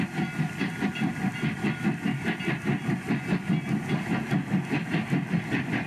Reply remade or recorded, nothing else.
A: recorded